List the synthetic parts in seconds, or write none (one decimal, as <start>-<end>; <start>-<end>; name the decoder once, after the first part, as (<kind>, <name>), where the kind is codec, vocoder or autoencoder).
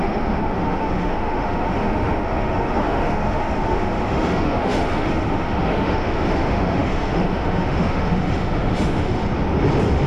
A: 0.0-9.2 (autoencoder, DAC-VAE)